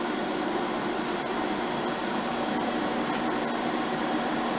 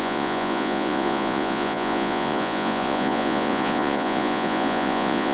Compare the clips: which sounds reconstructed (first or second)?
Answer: second